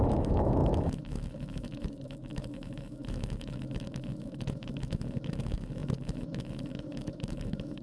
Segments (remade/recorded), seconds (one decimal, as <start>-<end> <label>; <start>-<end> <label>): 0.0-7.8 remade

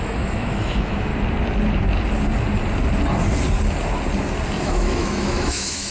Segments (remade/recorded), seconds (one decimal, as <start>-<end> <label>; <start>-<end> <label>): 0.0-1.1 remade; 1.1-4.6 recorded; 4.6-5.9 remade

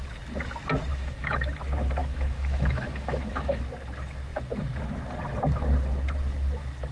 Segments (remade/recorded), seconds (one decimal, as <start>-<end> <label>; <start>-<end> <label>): 0.0-0.9 recorded; 0.9-1.5 remade; 1.5-2.0 recorded; 2.0-3.6 remade; 3.6-6.9 recorded